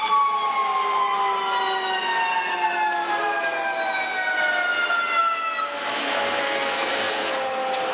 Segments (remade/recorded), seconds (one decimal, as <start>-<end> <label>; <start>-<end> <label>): 0.0-6.0 recorded; 6.0-7.3 remade; 7.3-7.9 recorded